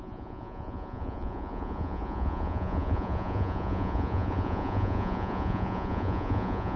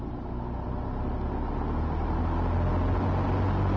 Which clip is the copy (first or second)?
first